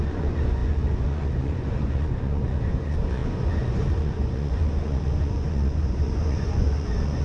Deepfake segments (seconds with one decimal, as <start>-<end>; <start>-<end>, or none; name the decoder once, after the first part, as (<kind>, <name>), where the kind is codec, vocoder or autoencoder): 0.0-7.2 (vocoder, Vocos)